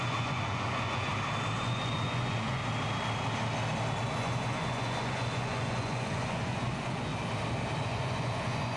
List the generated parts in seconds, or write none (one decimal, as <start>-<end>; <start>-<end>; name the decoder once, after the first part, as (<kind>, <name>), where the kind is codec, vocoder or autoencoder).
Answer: 0.0-1.1 (vocoder, Vocos); 1.6-2.6; 4.2-7.1; 7.8-8.8